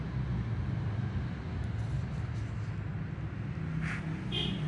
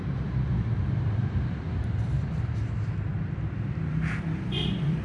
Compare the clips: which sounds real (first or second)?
first